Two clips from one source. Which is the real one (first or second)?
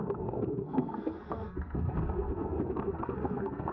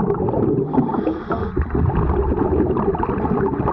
second